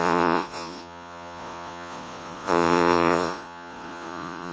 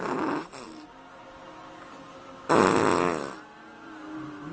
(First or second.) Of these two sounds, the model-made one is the first